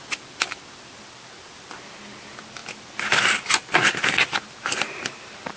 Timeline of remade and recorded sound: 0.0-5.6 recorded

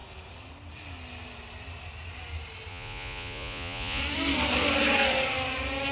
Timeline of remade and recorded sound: 0.0-2.7 recorded; 2.7-4.0 remade; 4.0-5.9 recorded

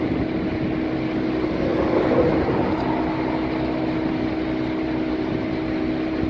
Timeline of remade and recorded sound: 0.0-6.3 recorded

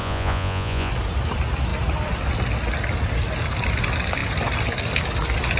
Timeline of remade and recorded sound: 0.0-0.9 remade; 0.9-5.6 recorded

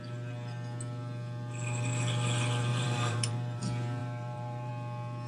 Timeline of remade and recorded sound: 0.0-2.7 recorded; 2.7-3.6 remade; 3.6-4.0 recorded; 4.0-4.7 remade; 4.7-5.3 recorded

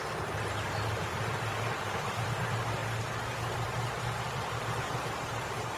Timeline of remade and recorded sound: 0.0-5.8 remade

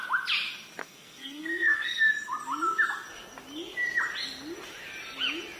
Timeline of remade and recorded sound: 0.0-0.8 recorded; 0.8-2.1 remade; 2.1-5.6 recorded

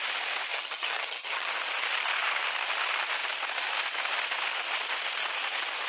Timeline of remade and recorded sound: 0.0-0.5 recorded; 0.5-1.5 remade; 1.5-5.9 recorded